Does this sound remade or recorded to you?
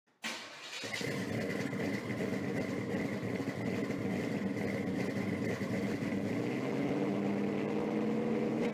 recorded